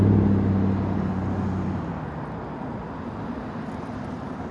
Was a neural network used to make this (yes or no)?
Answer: no